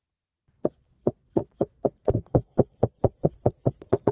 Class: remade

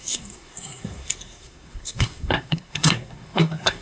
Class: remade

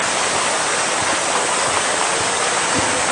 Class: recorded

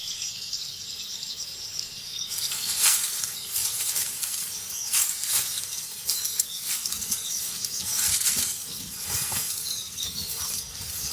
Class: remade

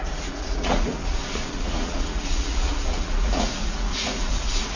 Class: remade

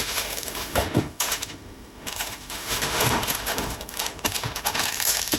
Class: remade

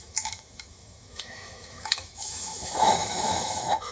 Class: remade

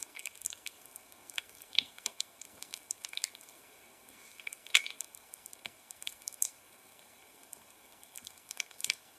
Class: remade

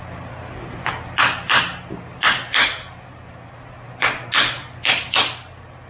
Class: recorded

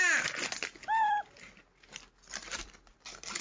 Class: recorded